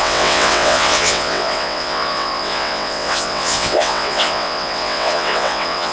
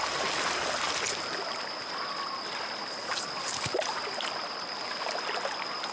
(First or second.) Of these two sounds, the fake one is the first